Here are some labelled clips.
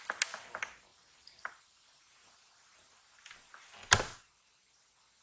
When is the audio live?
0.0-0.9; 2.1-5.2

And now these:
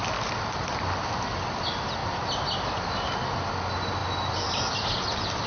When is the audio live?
0.0-5.5

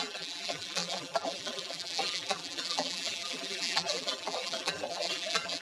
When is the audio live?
none

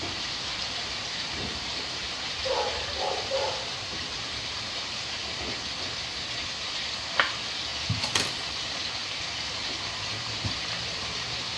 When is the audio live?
5.2-6.1

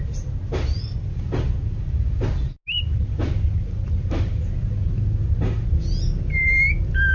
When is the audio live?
0.0-7.1

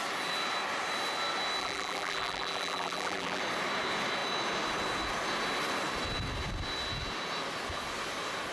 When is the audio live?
0.0-1.6; 3.4-8.5

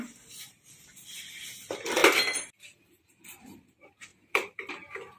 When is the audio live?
2.0-3.4